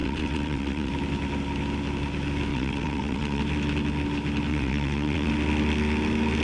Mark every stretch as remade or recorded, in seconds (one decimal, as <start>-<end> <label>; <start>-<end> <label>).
0.0-0.9 remade; 0.9-2.5 recorded; 2.5-3.4 remade; 3.4-4.5 recorded; 4.5-5.3 remade; 5.3-6.4 recorded

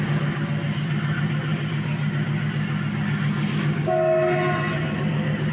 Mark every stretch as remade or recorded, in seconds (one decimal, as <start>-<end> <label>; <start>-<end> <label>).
0.0-5.5 recorded

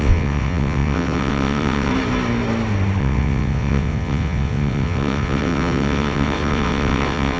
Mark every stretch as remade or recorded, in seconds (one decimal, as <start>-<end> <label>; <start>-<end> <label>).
0.0-1.9 remade; 1.9-3.0 recorded; 3.0-7.4 remade

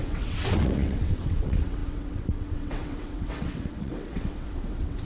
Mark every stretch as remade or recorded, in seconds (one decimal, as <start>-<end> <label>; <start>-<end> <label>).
0.0-5.0 remade

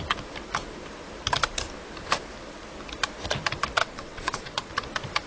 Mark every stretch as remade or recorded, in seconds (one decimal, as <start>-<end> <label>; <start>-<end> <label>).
0.0-3.8 recorded; 3.8-4.7 remade; 4.7-5.3 recorded

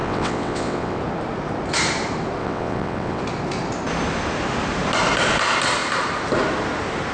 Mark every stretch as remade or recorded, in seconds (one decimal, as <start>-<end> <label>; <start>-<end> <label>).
0.0-1.0 remade; 1.0-2.4 recorded; 2.4-3.2 remade; 3.2-7.1 recorded

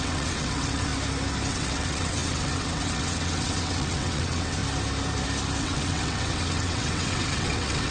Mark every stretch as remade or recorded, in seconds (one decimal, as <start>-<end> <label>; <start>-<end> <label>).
0.0-0.9 remade; 0.9-1.5 recorded; 1.5-4.6 remade; 4.6-5.6 recorded; 5.6-7.9 remade

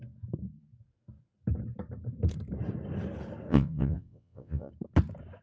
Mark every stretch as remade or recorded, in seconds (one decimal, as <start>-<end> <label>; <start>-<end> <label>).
0.0-3.5 recorded; 3.5-4.7 remade; 4.7-5.4 recorded